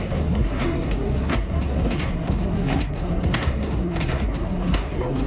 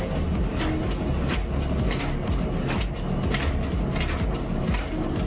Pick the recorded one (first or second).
second